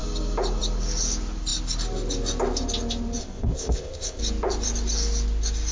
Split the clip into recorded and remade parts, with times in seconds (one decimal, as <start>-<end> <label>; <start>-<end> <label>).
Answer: 0.0-3.2 recorded; 3.2-4.2 remade; 4.2-5.7 recorded